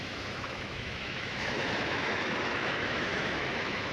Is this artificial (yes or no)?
yes